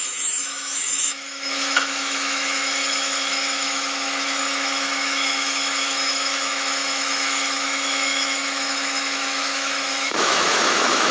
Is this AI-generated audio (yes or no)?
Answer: yes